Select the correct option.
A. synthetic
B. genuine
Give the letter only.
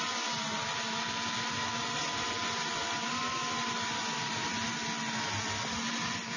B